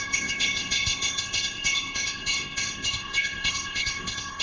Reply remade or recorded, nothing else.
remade